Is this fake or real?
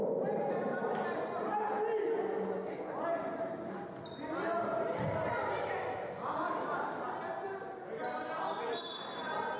real